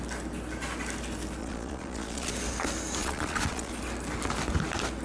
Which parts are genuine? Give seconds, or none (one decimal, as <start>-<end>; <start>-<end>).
0.0-1.4; 2.3-3.0; 3.7-5.0